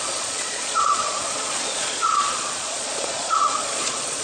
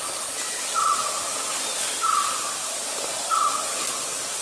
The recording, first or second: second